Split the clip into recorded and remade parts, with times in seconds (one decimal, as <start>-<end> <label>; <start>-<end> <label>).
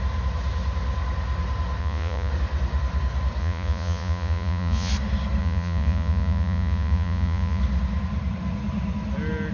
0.0-1.8 recorded; 1.8-2.3 remade; 2.3-3.4 recorded; 3.4-4.9 remade; 4.9-5.4 recorded; 5.4-7.6 remade; 7.6-9.5 recorded